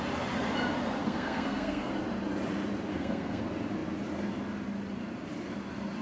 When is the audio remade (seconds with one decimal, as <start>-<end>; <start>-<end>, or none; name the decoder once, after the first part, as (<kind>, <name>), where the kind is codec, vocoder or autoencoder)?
1.0-1.9 (codec, SNAC); 2.9-3.4